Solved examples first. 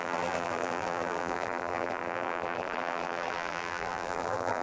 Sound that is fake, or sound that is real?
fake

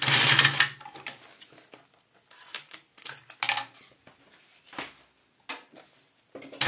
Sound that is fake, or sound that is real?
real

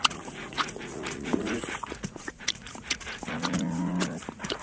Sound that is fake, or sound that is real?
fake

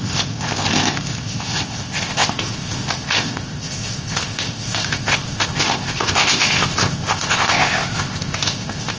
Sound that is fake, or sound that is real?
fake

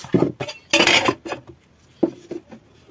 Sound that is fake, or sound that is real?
real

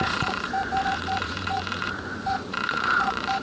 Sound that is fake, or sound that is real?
fake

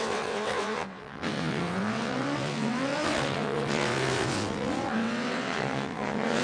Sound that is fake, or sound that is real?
fake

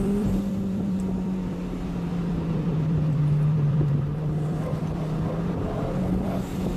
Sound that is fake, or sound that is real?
fake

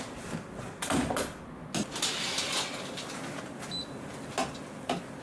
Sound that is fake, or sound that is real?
real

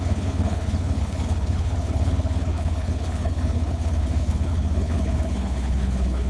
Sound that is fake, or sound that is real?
fake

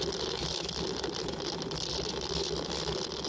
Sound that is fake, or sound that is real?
fake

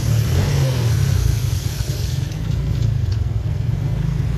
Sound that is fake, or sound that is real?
fake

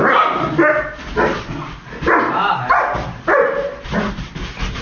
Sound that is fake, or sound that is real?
real